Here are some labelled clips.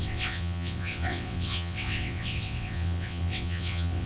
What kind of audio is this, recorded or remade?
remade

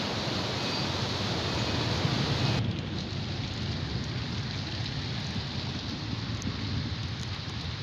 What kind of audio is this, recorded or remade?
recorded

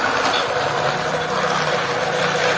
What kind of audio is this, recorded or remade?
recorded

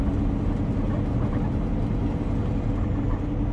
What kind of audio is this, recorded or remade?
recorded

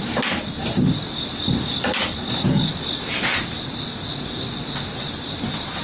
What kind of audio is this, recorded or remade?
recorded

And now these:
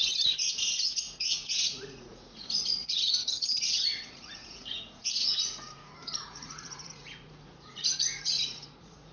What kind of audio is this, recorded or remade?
remade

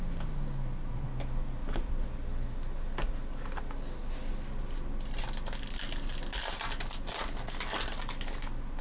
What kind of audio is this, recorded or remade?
recorded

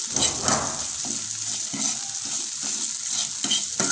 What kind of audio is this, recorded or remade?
recorded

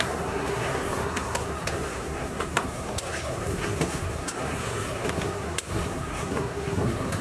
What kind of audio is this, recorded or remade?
remade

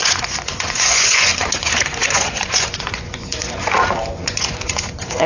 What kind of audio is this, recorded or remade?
remade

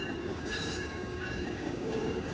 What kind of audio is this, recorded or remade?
remade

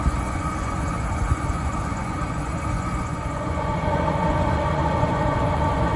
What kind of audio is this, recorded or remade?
remade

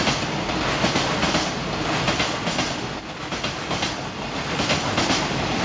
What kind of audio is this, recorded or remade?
recorded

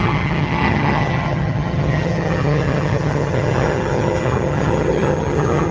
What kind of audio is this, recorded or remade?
remade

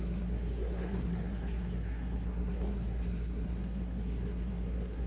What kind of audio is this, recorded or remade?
remade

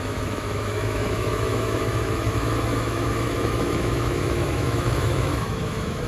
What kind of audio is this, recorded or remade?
remade